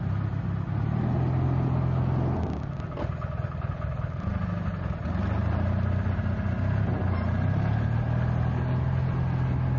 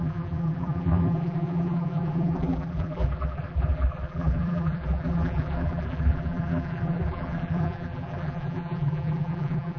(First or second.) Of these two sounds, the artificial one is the second